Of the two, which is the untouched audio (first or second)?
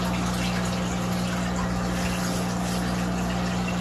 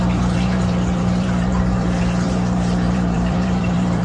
first